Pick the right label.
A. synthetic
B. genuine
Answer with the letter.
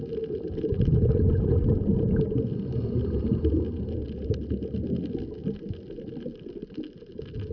B